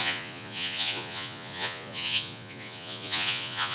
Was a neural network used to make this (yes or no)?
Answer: yes